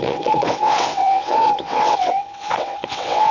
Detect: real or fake fake